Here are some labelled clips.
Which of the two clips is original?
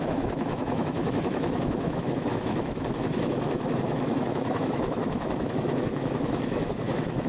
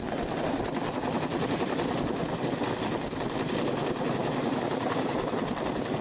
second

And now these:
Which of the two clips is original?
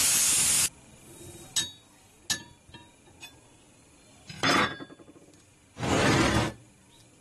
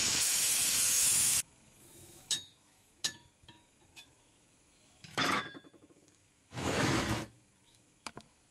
first